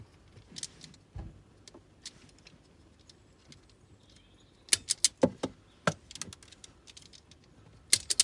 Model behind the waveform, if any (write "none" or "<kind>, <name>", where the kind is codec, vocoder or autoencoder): none